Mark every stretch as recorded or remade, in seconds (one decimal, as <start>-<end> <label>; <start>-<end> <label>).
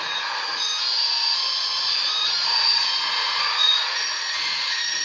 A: 0.0-0.7 remade; 0.7-1.6 recorded; 1.6-5.0 remade